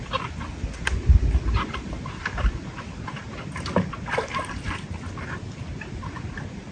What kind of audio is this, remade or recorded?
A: recorded